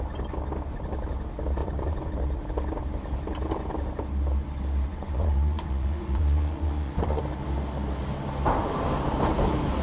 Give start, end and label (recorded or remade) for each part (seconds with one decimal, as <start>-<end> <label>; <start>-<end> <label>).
0.0-1.6 recorded; 1.6-2.1 remade; 2.1-4.9 recorded; 4.9-7.2 remade; 7.2-9.8 recorded